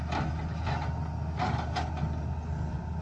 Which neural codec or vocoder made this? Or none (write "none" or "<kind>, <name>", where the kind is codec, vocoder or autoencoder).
none